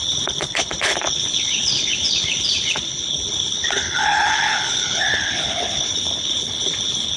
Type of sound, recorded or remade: remade